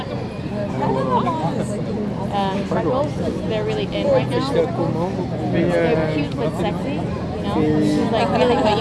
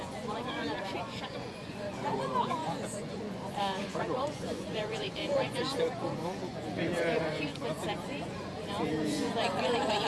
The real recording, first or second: first